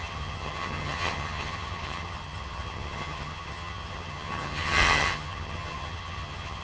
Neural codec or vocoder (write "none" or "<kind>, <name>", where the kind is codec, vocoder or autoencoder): vocoder, HiFi-GAN